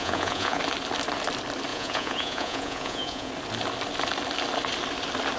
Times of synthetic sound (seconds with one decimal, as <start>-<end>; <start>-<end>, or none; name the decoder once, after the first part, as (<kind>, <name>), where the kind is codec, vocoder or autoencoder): 0.0-0.6 (vocoder, Vocos); 1.7-3.3